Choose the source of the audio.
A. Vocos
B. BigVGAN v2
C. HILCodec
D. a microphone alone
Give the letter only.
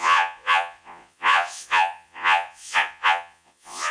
A